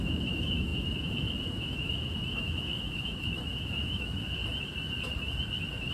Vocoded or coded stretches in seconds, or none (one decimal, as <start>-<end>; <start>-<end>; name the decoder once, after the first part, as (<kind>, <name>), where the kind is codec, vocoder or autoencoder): 0.0-4.4 (autoencoder, DAC-VAE)